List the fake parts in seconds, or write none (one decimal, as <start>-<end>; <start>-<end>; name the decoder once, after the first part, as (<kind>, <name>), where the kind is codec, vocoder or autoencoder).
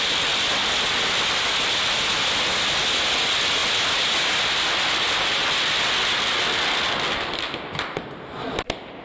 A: none